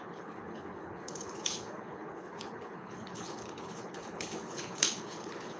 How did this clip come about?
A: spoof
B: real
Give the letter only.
A